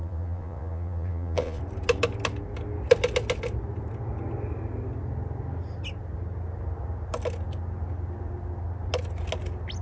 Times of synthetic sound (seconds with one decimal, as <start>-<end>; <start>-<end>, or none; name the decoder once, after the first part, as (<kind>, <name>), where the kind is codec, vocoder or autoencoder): 0.0-1.6 (vocoder, Vocos)